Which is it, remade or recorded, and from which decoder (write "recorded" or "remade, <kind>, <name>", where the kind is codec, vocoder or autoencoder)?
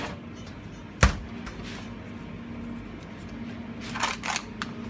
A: recorded